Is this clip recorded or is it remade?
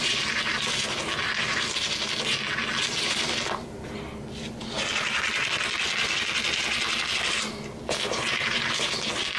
recorded